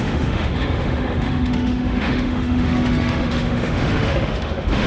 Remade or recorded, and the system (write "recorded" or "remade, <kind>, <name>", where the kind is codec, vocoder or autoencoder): remade, autoencoder, DAC-VAE